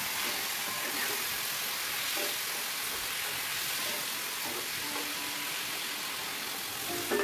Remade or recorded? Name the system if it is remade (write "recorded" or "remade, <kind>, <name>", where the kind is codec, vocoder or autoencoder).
recorded